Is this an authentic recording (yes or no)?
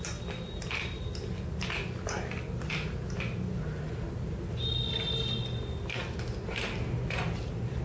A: yes